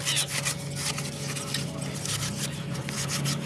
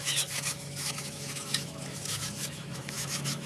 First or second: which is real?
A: first